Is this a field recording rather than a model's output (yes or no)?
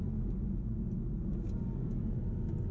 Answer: yes